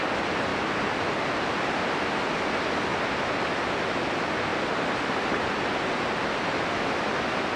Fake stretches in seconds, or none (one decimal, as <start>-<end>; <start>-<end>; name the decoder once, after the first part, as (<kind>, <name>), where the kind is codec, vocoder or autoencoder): 0.5-1.7 (vocoder, BigVGAN v2)